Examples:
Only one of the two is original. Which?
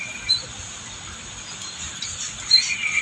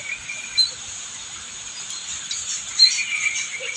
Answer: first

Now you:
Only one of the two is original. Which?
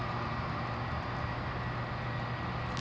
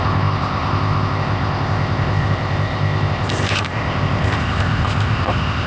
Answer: first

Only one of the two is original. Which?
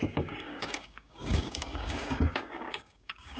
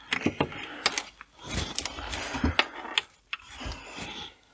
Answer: second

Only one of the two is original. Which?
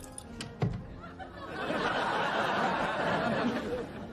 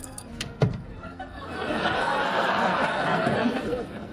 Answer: first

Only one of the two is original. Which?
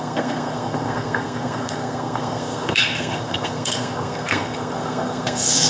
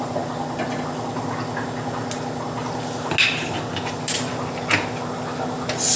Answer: second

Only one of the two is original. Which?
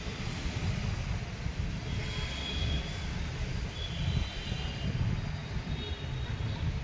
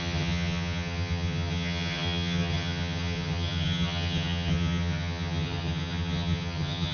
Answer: first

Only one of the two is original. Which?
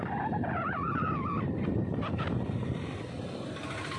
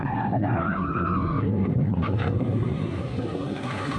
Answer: first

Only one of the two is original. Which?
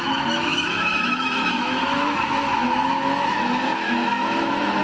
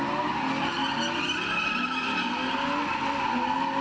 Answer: second